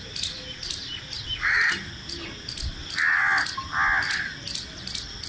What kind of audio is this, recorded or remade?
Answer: recorded